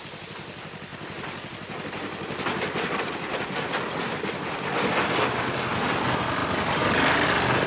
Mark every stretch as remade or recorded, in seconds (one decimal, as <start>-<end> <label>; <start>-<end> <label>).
0.0-7.7 recorded